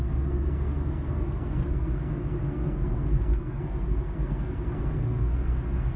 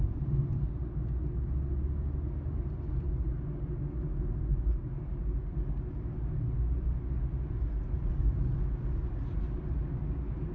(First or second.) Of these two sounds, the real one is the second